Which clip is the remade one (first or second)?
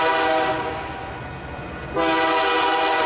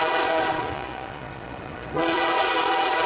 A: second